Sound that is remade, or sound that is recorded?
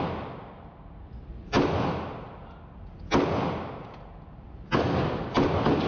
recorded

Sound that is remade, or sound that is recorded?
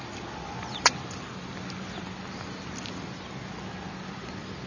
recorded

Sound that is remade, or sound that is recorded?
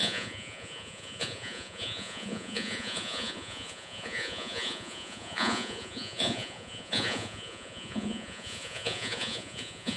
remade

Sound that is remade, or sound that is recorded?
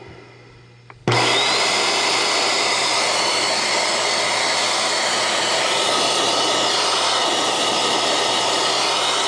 recorded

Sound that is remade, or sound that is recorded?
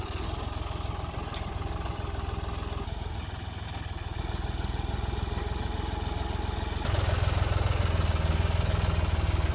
recorded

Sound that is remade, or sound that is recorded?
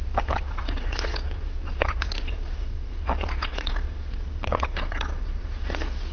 remade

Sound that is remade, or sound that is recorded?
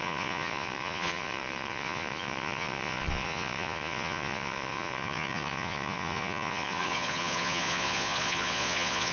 remade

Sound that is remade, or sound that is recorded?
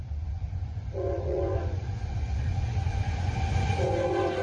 remade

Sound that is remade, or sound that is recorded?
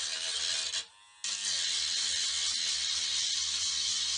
recorded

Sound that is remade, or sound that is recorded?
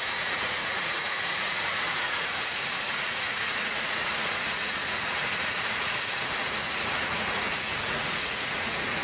remade